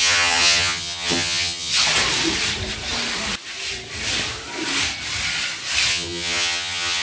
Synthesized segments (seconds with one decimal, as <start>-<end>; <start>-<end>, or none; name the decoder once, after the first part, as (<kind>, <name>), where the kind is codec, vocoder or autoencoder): 0.0-1.7 (vocoder, HiFi-GAN); 5.9-7.0